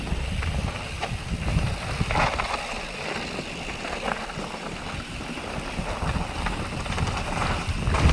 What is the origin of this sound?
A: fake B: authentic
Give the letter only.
B